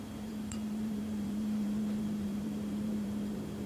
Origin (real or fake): fake